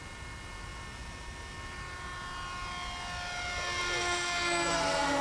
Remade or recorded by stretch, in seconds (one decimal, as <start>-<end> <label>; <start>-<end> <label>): 0.0-5.2 recorded